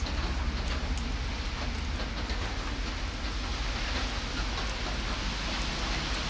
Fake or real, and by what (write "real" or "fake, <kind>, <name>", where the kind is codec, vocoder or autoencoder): real